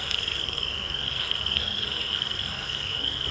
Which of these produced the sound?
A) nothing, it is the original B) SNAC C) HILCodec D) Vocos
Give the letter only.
B